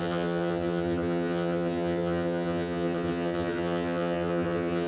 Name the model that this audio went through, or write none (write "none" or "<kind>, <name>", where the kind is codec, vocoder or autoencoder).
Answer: vocoder, HiFi-GAN